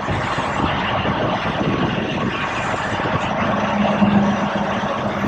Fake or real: real